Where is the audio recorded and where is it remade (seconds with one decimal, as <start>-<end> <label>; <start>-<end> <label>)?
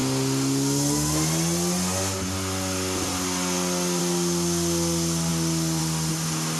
0.0-6.6 recorded